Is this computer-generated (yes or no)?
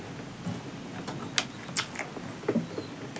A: no